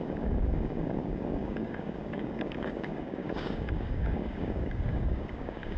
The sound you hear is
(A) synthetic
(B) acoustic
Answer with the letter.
A